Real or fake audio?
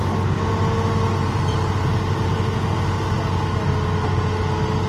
real